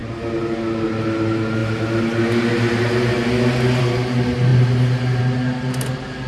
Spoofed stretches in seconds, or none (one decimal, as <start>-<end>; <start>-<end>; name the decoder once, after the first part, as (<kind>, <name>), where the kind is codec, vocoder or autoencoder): none